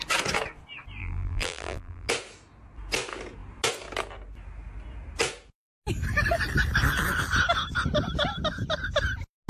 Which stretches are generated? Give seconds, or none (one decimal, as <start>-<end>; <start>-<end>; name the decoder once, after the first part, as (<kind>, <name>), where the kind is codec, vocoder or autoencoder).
1.0-2.1 (vocoder, BigVGAN v2)